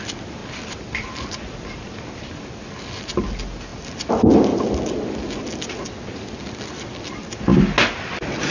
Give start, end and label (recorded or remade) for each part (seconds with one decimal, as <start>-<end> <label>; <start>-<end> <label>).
0.0-0.4 recorded; 0.4-2.6 remade; 2.6-8.5 recorded